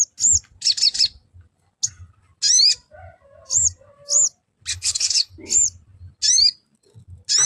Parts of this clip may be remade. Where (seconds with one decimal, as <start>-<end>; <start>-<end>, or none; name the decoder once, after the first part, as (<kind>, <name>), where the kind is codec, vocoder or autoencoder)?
4.7-5.3 (codec, HILCodec)